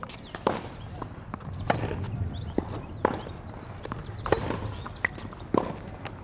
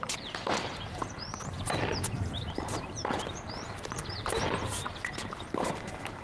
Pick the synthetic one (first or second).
second